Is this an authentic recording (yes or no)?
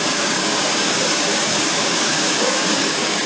no